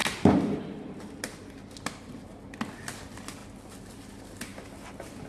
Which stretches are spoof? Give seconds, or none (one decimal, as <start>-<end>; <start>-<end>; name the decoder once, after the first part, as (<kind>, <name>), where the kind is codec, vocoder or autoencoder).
none